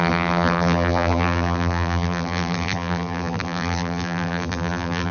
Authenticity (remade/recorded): remade